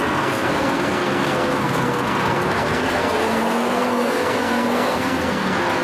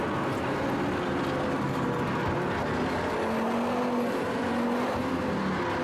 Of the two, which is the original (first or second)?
second